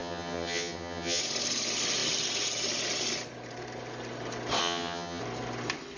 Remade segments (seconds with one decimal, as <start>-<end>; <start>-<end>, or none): 0.0-1.2; 4.6-5.2